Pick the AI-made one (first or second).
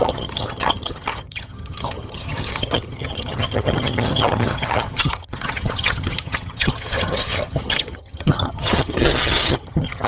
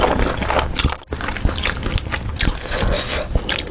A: first